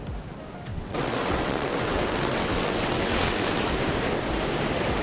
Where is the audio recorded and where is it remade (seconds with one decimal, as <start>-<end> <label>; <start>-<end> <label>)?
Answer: 0.0-0.7 recorded; 0.7-3.7 remade; 3.7-5.0 recorded